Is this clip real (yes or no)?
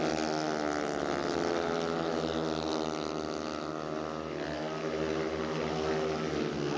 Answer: yes